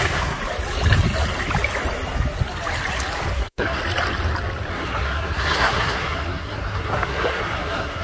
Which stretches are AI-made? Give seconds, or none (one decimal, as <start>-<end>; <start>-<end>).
0.0-0.4; 3.3-3.8; 4.7-8.0

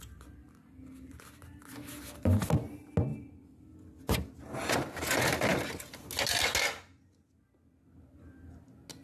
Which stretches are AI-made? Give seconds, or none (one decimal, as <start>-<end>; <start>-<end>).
none

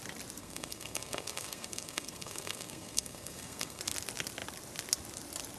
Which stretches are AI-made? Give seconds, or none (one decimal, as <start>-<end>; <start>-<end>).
0.4-3.8

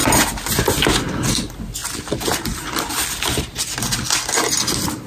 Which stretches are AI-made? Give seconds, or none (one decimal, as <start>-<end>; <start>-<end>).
none